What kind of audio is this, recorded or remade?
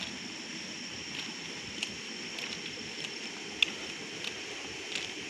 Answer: recorded